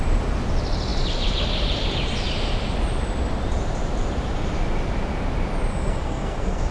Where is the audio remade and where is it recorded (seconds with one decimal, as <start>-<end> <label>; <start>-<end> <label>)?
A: 0.0-5.7 recorded; 5.7-6.7 remade